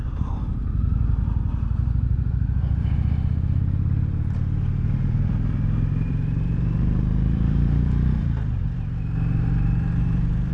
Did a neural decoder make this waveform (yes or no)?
yes